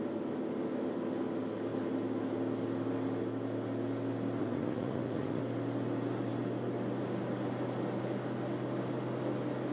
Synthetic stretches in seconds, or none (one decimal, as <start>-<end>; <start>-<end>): 4.4-5.4